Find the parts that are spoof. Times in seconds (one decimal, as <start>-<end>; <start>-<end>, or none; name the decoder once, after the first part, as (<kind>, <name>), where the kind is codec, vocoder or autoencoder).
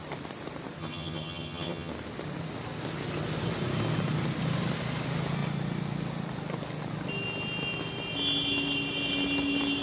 0.8-1.9 (vocoder, HiFi-GAN)